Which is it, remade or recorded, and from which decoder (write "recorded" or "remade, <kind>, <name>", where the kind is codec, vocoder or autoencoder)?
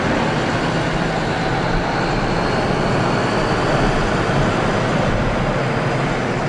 recorded